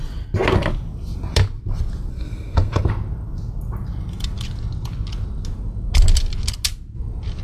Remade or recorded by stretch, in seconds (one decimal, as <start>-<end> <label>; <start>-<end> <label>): 0.0-2.1 recorded; 2.1-2.9 remade; 2.9-7.4 recorded